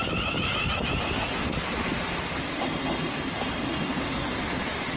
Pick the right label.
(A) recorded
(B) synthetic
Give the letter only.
A